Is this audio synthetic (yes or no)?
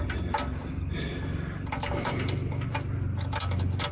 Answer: no